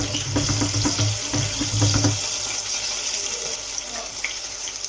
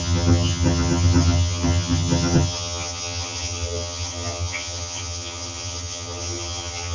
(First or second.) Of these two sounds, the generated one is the second